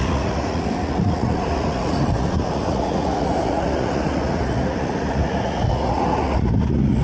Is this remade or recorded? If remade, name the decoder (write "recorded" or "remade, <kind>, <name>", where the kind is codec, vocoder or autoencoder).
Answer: remade, vocoder, Vocos